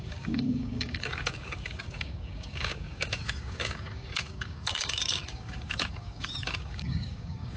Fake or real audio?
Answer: fake